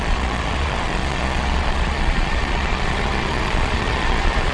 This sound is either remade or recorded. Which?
remade